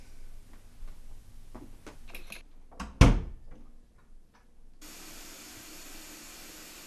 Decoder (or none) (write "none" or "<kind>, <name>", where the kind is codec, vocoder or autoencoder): none